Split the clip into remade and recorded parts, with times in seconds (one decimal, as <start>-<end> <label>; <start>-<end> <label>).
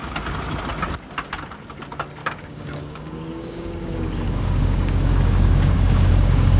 0.0-2.2 recorded; 2.2-6.6 remade